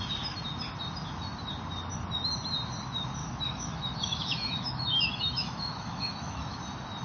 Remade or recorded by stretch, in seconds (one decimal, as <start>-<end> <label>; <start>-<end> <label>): 0.0-3.2 recorded; 3.2-6.6 remade; 6.6-7.0 recorded